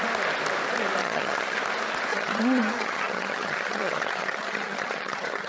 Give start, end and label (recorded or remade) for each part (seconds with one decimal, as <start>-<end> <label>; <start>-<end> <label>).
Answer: 0.0-1.0 recorded; 1.0-1.6 remade; 1.6-2.1 recorded; 2.1-5.5 remade